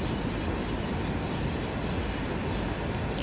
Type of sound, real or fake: real